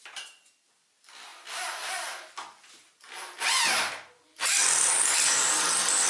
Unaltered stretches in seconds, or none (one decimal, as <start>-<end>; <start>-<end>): 0.0-6.1